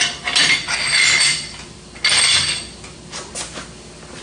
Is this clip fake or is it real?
real